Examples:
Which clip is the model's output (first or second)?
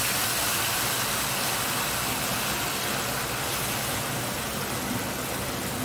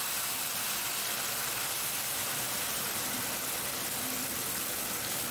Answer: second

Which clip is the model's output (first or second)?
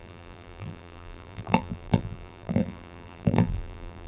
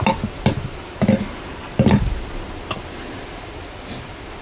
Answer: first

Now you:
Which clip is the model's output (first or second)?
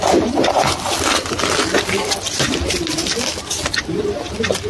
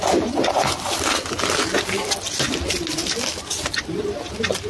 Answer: first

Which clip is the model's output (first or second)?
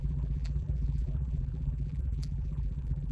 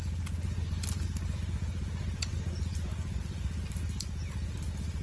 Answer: first